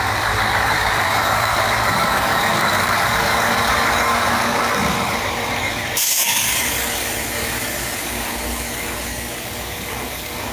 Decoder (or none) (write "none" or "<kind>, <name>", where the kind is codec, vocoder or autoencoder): codec, DAC